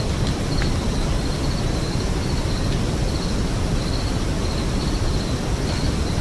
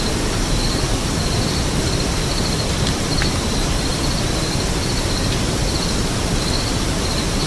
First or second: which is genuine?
first